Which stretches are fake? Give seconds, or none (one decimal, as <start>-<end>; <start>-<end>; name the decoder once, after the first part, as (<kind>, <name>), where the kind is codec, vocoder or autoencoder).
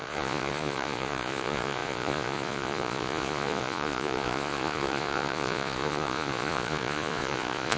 0.0-7.8 (vocoder, Vocos)